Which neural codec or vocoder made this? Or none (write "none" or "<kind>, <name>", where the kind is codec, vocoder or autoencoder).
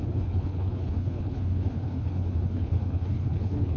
codec, HILCodec